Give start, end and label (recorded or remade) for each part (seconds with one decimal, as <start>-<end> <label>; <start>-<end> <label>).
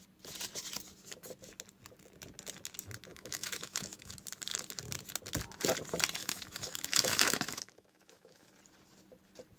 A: 0.0-3.1 recorded; 3.1-4.1 remade; 4.1-6.2 recorded; 6.2-8.5 remade; 8.5-9.6 recorded